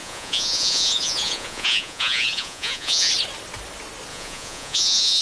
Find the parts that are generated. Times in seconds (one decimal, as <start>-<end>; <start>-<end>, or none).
0.0-3.1; 4.1-5.2